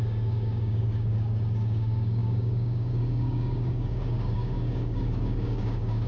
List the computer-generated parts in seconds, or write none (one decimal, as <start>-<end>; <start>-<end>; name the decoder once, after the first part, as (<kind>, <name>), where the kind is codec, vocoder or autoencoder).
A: 0.0-6.1 (codec, DAC)

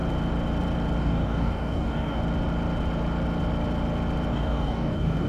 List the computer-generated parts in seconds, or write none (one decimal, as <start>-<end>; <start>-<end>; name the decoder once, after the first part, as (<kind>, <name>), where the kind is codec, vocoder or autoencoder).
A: 1.0-2.2 (codec, DAC); 4.3-5.3